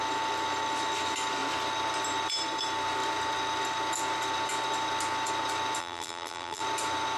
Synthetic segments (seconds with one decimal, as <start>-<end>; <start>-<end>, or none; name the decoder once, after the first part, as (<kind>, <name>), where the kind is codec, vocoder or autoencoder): 5.8-6.6 (vocoder, BigVGAN v2)